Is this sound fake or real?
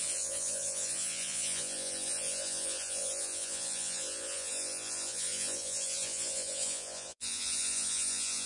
fake